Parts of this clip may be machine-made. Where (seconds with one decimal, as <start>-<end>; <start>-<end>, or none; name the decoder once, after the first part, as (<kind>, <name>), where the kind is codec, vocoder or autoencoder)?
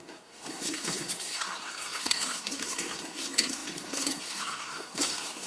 0.0-5.5 (codec, SNAC)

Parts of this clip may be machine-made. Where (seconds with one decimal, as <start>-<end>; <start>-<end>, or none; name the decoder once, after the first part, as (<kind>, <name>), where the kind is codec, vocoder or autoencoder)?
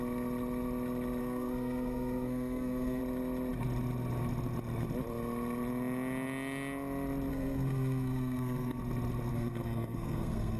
1.2-3.0 (codec, SNAC); 7.3-8.8; 9.3-10.6